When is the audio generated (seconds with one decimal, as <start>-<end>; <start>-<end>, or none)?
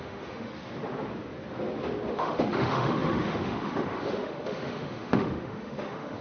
0.0-0.5; 2.1-6.2